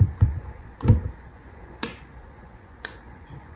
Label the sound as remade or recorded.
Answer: remade